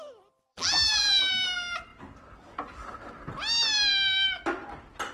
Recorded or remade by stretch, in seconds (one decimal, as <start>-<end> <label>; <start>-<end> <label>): 0.0-0.5 recorded; 0.5-1.2 remade; 1.2-5.1 recorded